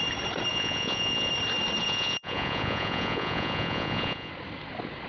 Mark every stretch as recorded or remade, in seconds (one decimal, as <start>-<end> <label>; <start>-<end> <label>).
0.0-0.5 recorded; 0.5-1.3 remade; 1.3-1.8 recorded; 1.8-4.3 remade; 4.3-5.1 recorded